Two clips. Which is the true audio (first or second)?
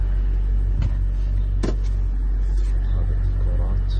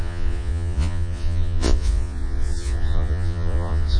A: first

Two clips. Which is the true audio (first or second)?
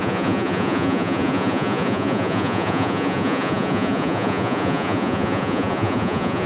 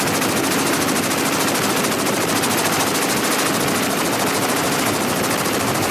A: second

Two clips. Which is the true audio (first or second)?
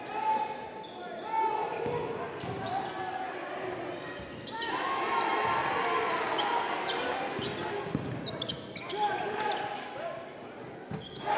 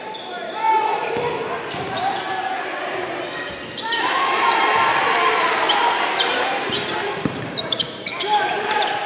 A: first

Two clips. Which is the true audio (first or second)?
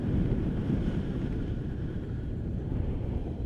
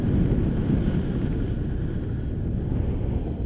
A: second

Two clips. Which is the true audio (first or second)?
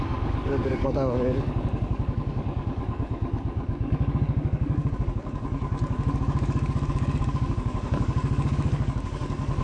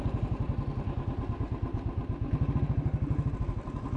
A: second